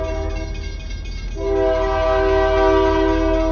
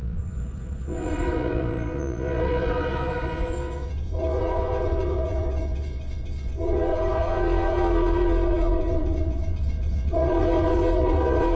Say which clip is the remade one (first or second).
second